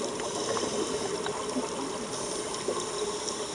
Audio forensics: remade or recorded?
recorded